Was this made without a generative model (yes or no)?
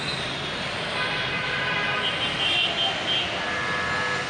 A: yes